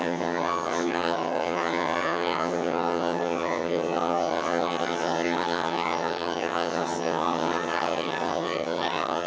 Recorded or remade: remade